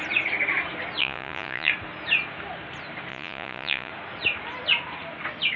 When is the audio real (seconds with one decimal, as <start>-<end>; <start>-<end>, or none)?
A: 0.0-1.0; 1.7-3.1; 3.9-5.6